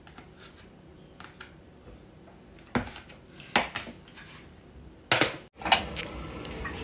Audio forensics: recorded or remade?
recorded